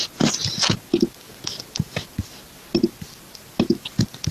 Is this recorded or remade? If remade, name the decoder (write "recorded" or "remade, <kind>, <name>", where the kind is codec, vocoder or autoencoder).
recorded